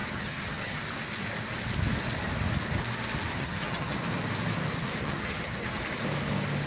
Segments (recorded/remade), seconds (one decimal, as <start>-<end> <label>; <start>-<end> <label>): 0.0-0.8 remade; 0.8-3.3 recorded; 3.3-4.0 remade; 4.0-5.0 recorded; 5.0-5.8 remade; 5.8-6.7 recorded